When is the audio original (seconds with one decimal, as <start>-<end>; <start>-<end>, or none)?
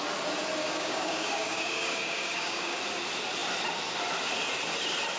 0.0-0.6; 2.8-5.2